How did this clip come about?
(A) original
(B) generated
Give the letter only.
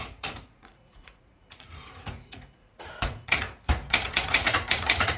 B